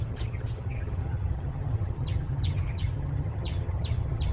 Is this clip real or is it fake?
fake